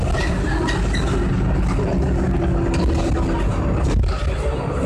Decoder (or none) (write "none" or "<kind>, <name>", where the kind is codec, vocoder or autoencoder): none